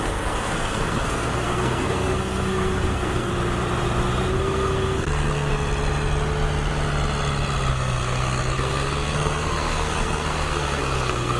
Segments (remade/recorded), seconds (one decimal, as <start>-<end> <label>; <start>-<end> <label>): 0.0-3.3 remade; 3.3-4.3 recorded; 4.3-5.5 remade; 5.5-7.7 recorded; 7.7-11.4 remade